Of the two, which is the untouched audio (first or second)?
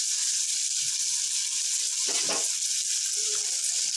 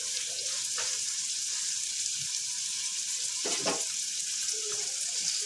first